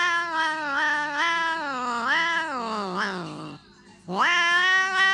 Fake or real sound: real